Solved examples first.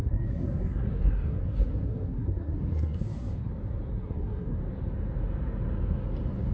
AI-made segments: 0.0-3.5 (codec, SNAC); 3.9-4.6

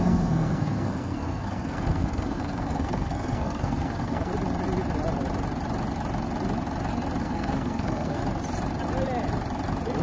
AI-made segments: 0.0-4.3 (codec, SNAC); 7.2-8.2

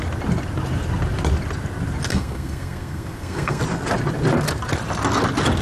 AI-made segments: 2.1-3.6 (codec, SNAC)